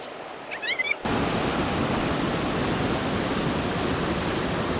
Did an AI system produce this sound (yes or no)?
no